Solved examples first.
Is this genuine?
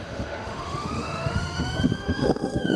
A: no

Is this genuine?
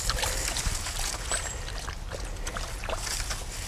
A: yes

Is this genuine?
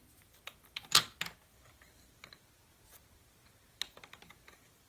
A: yes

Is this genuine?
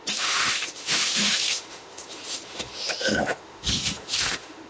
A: no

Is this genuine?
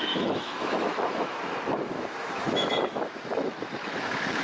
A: no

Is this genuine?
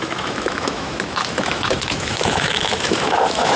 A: no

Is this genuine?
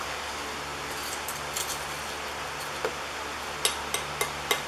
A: yes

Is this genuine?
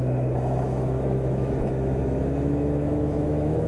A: no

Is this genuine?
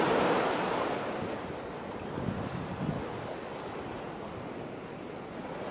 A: yes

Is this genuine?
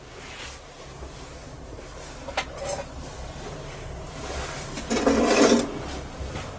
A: yes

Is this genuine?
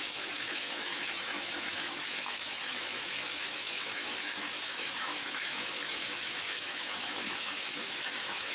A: no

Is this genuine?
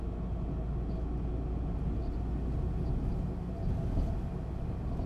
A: yes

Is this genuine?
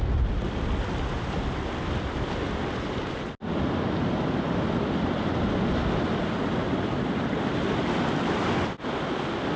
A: yes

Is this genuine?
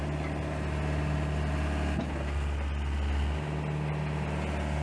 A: yes